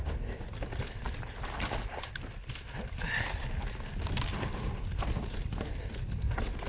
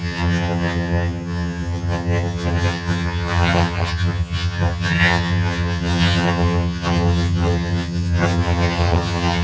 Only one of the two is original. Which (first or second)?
first